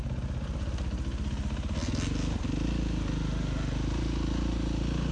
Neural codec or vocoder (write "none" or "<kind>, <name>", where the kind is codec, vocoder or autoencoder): none